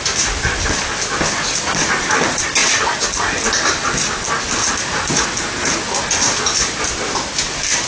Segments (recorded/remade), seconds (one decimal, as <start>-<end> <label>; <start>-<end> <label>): 0.0-7.9 recorded